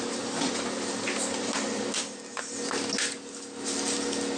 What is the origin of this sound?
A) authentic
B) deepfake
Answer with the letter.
A